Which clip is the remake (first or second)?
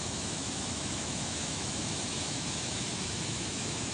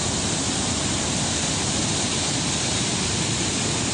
first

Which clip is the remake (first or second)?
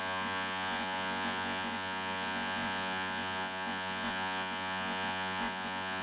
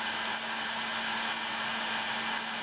first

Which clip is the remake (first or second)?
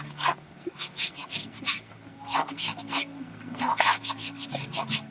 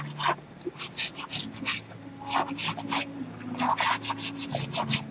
first